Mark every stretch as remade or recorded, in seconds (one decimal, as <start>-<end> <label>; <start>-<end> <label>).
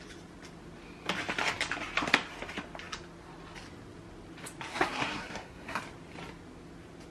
0.0-4.7 recorded; 4.7-5.8 remade; 5.8-7.1 recorded